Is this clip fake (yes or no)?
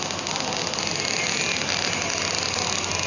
no